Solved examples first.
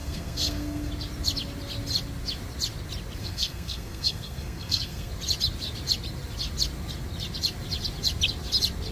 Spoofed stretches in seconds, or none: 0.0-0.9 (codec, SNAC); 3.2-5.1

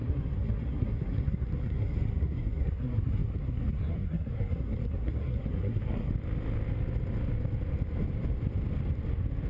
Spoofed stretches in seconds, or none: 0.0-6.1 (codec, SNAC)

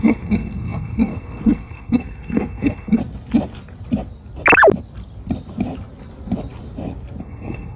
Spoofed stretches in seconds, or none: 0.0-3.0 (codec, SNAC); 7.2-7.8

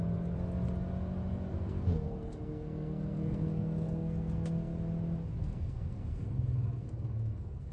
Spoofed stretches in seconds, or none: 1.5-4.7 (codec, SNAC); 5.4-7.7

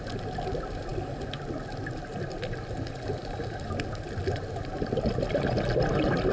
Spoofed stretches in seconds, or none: none